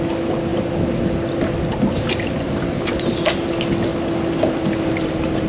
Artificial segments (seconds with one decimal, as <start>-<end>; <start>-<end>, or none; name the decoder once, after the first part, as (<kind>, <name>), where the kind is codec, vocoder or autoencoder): none